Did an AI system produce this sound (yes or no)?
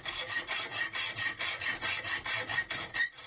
no